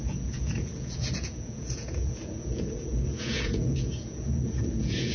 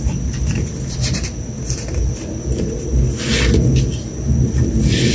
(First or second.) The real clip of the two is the second